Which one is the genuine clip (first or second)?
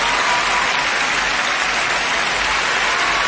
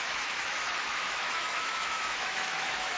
first